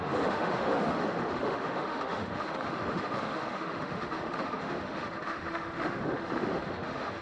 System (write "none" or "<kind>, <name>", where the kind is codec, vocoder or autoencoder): autoencoder, DAC-VAE